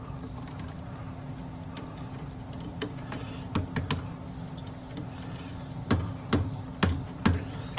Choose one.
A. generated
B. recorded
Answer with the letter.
B